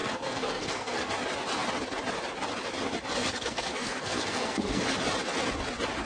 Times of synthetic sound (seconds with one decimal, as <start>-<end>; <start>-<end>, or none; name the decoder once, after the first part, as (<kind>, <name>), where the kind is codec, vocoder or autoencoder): 0.0-1.1 (codec, SNAC); 3.2-4.8